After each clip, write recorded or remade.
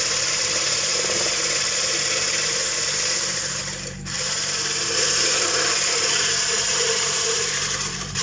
remade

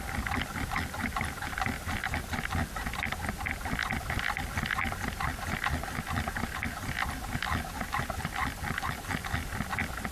remade